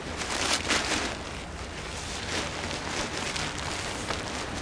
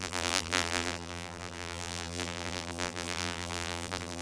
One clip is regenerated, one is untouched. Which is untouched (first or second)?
first